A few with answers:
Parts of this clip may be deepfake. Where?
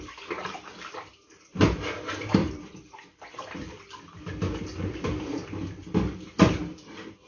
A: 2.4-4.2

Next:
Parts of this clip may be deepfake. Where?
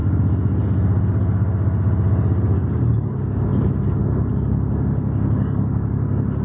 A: 2.7-3.5; 4.3-6.4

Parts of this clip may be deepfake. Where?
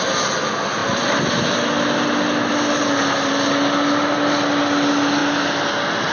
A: none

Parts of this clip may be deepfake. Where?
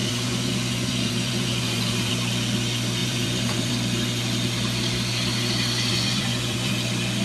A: 0.0-2.1; 3.0-3.7; 5.9-6.7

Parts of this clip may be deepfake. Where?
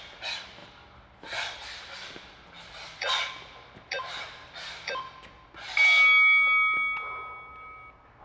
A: none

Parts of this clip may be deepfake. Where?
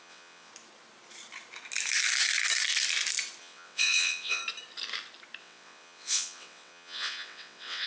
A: 0.0-0.5; 3.4-4.4; 5.4-7.9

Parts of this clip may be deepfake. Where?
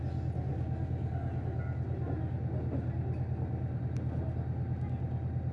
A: none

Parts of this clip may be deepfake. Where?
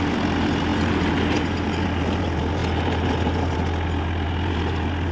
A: none